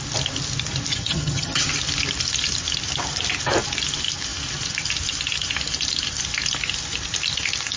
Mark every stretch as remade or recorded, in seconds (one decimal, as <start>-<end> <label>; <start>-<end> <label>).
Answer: 0.0-0.9 recorded; 0.9-1.7 remade; 1.7-7.8 recorded